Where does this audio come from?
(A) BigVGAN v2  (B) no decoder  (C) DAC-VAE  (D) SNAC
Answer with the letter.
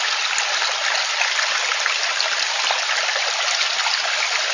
B